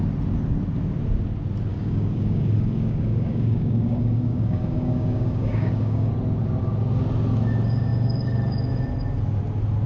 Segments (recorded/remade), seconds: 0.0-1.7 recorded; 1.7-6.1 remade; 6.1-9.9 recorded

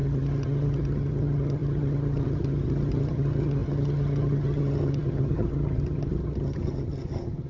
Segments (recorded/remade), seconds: 0.0-7.5 remade

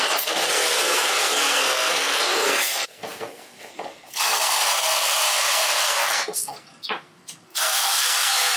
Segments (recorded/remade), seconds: 0.0-8.6 remade

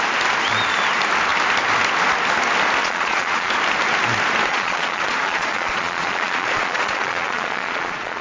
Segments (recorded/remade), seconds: 0.0-2.8 recorded; 2.8-3.5 remade; 3.5-4.5 recorded; 4.5-8.2 remade

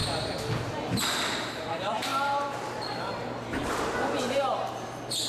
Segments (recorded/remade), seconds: 0.0-0.9 recorded; 0.9-5.3 remade

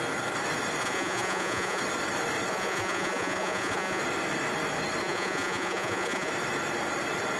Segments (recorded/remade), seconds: 0.0-0.8 recorded; 0.8-1.8 remade; 1.8-2.5 recorded; 2.5-4.0 remade; 4.0-5.0 recorded; 5.0-6.3 remade; 6.3-7.4 recorded

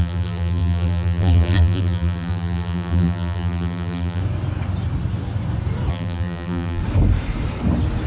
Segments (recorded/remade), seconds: 0.0-4.2 remade; 4.2-5.9 recorded; 5.9-6.8 remade; 6.8-8.1 recorded